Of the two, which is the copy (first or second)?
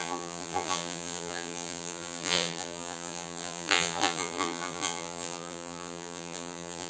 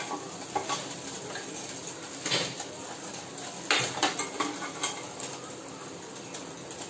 first